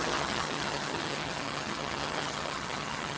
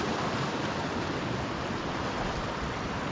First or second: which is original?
second